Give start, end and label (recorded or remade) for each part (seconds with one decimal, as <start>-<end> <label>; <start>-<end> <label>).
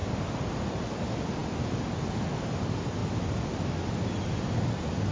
0.0-5.1 recorded